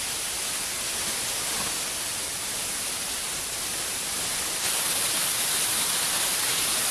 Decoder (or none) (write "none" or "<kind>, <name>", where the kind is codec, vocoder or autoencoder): none